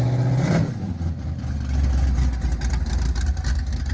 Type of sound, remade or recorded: recorded